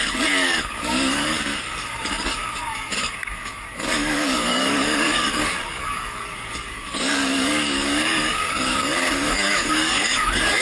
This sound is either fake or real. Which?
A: fake